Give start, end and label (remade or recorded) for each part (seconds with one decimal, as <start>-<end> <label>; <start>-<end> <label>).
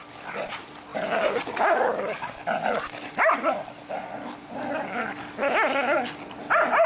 0.0-6.9 recorded